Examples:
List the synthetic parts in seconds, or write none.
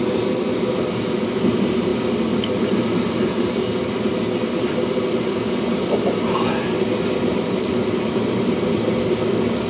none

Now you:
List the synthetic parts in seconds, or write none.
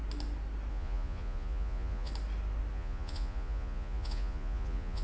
0.7-2.1 (vocoder, Vocos); 2.7-5.0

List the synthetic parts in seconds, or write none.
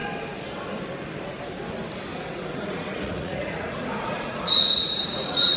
2.1-5.6 (vocoder, Vocos)